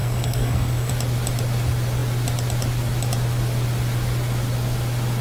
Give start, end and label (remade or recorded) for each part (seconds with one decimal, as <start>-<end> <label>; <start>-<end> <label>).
0.0-0.9 remade; 0.9-5.2 recorded